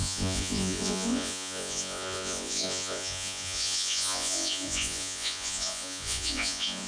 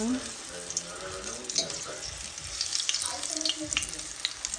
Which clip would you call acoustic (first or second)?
second